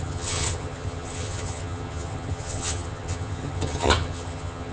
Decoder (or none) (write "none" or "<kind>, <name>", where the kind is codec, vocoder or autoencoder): vocoder, HiFi-GAN